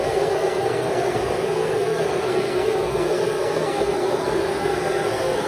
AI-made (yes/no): yes